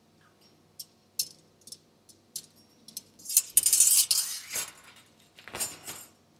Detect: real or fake real